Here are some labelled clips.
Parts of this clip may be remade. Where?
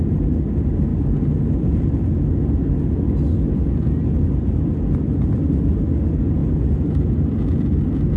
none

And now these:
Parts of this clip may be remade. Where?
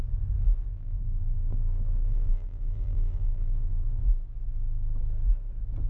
0.7-4.0 (vocoder, BigVGAN v2)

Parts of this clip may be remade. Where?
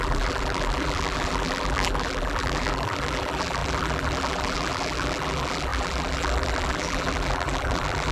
0.0-8.1 (vocoder, BigVGAN v2)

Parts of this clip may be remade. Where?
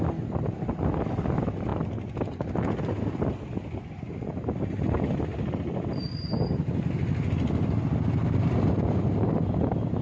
none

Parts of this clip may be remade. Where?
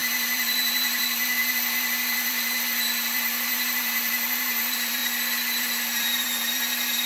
0.0-5.0 (vocoder, BigVGAN v2); 5.6-7.1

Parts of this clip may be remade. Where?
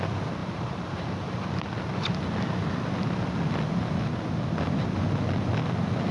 0.4-1.4 (vocoder, BigVGAN v2)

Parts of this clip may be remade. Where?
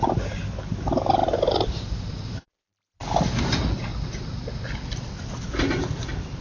1.2-3.4 (vocoder, BigVGAN v2)